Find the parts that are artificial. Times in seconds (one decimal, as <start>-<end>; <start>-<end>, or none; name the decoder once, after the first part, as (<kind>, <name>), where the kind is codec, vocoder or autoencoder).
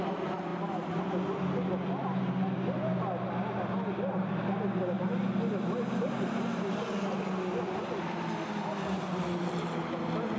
none